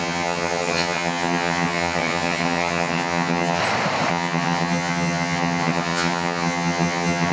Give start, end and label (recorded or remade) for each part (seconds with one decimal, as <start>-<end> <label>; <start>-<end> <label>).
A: 0.0-3.6 remade; 3.6-4.1 recorded; 4.1-7.3 remade